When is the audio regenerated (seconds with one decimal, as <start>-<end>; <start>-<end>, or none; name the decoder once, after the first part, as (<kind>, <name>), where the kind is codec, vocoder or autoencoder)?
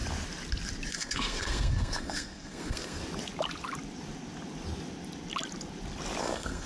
0.9-3.0 (codec, SNAC); 6.2-6.7